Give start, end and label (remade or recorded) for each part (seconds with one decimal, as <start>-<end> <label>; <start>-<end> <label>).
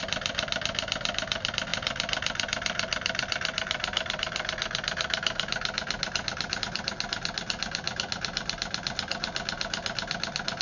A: 0.0-10.6 recorded